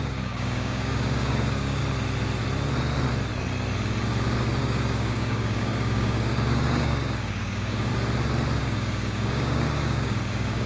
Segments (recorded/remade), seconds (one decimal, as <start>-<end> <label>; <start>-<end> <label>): 0.0-1.8 remade; 1.8-4.6 recorded; 4.6-7.9 remade; 7.9-8.6 recorded; 8.6-10.7 remade